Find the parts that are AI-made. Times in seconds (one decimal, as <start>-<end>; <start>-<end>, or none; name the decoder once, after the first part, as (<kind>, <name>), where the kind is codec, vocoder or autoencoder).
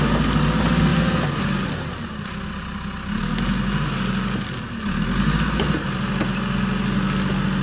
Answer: none